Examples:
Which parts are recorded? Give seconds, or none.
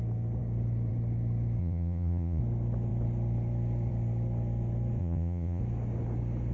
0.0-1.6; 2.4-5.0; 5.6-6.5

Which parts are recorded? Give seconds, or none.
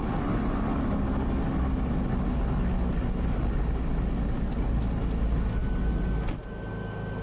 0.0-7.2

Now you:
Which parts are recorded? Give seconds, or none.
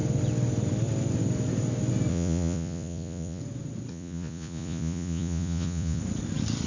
0.0-2.1; 3.4-3.9; 6.0-6.7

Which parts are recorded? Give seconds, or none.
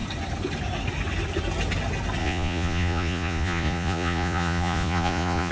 0.0-2.2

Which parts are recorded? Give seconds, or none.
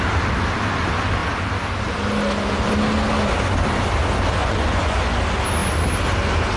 0.0-4.4; 5.0-6.6